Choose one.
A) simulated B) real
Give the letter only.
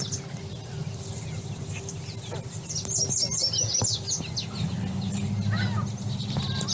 B